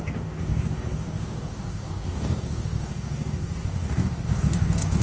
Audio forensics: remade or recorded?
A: remade